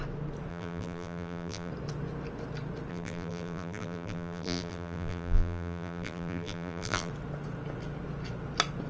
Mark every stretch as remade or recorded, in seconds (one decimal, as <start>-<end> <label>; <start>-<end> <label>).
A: 0.0-0.5 recorded; 0.5-1.7 remade; 1.7-2.9 recorded; 2.9-7.1 remade; 7.1-8.9 recorded